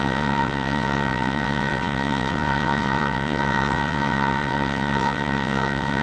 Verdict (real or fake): fake